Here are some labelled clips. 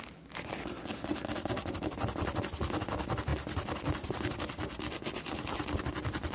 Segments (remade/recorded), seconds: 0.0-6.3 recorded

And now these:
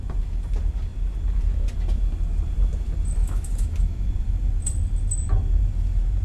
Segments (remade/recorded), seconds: 0.0-3.2 recorded; 3.2-4.1 remade; 4.1-6.2 recorded

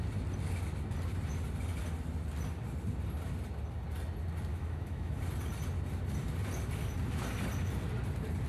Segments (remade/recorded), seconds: 0.0-4.5 recorded; 4.5-5.2 remade; 5.2-8.5 recorded

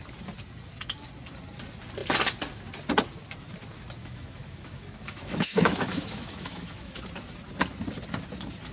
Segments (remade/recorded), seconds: 0.0-4.0 recorded; 4.0-7.0 remade; 7.0-8.7 recorded

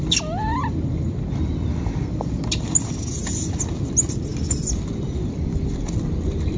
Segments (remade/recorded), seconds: 0.0-6.6 recorded

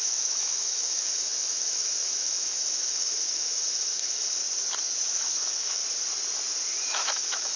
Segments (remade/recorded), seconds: 0.0-4.4 remade; 4.4-5.0 recorded; 5.0-5.8 remade; 5.8-6.9 recorded; 6.9-7.6 remade